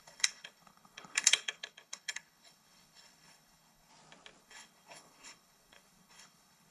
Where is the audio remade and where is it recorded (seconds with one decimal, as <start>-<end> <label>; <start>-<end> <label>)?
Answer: 0.0-3.9 remade; 3.9-4.4 recorded; 4.4-6.7 remade